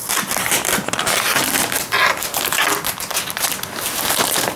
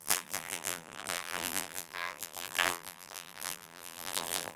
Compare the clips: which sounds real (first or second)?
first